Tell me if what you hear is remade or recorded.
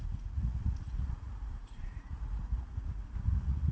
remade